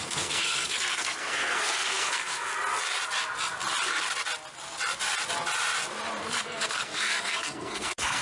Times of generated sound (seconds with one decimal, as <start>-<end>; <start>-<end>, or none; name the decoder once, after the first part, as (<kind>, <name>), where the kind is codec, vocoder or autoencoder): 0.0-2.5 (codec, SNAC); 6.2-8.2